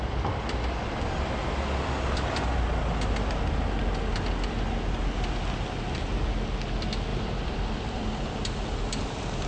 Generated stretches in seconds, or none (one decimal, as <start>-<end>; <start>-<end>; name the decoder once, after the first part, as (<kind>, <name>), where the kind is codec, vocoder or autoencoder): 7.1-8.3 (vocoder, BigVGAN v2)